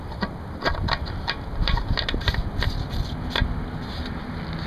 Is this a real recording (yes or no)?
yes